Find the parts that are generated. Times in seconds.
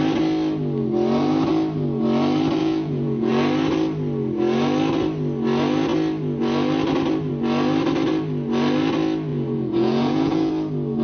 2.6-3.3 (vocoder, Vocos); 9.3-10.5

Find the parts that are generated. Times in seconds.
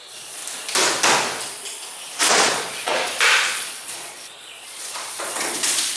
0.0-0.4 (vocoder, Vocos); 2.3-2.9; 3.5-6.0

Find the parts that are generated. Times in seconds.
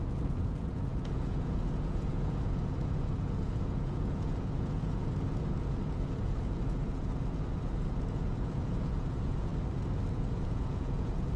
0.0-9.5 (vocoder, Vocos); 10.1-11.4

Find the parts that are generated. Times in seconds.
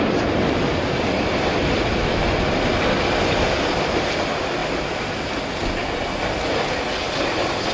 none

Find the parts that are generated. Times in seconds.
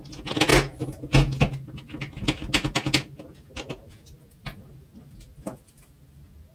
none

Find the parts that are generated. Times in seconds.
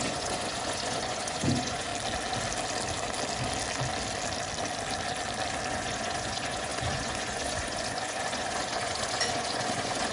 0.0-1.9 (vocoder, Vocos); 5.7-10.1